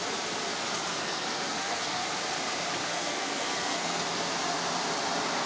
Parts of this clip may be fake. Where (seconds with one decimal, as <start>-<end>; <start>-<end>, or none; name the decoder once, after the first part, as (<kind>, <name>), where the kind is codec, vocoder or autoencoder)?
0.9-2.0 (codec, SNAC); 2.8-4.0